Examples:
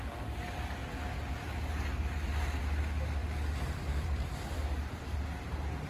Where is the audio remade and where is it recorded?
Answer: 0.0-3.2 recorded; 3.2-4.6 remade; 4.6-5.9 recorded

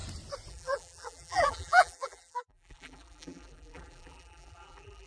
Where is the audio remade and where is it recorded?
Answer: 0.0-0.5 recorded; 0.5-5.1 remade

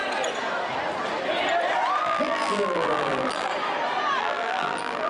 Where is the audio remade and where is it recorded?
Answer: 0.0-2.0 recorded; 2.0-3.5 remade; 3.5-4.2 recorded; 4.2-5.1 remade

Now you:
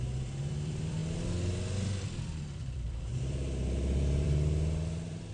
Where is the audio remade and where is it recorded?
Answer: 0.0-1.0 remade; 1.0-2.0 recorded; 2.0-5.3 remade